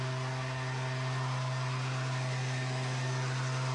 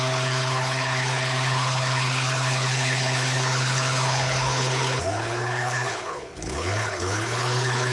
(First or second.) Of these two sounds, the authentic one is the first